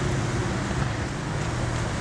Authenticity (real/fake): real